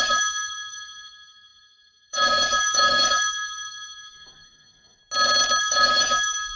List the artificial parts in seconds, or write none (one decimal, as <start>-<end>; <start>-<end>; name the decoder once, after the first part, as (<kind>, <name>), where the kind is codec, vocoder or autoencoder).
0.0-5.0 (codec, DAC); 5.6-6.6